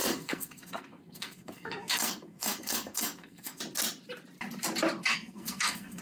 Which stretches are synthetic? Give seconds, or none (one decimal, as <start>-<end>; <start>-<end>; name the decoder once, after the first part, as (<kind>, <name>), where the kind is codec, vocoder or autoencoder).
0.0-3.6 (codec, SNAC); 5.1-6.0